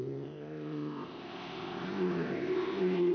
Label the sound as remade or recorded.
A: remade